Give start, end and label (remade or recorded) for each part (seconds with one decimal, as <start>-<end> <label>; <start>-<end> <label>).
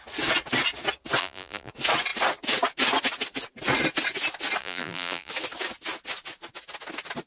0.0-1.2 recorded; 1.2-1.7 remade; 1.7-4.6 recorded; 4.6-5.3 remade; 5.3-7.3 recorded